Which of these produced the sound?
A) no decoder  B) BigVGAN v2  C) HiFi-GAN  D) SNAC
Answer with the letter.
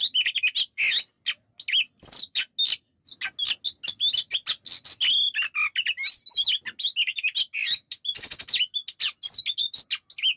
A